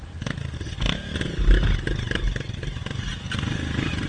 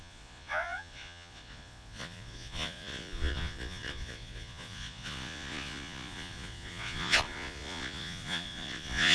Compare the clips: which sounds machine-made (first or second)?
second